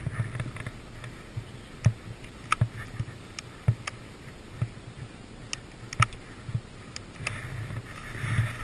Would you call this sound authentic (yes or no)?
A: yes